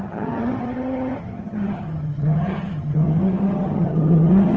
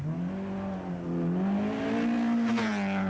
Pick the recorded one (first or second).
second